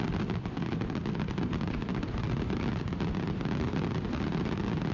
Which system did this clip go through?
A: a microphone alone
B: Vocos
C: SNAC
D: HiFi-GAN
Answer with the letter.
A